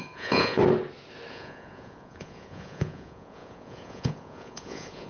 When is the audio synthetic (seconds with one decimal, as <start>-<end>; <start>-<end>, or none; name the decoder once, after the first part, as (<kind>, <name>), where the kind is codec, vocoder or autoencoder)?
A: 0.0-0.6 (vocoder, Vocos); 1.3-5.1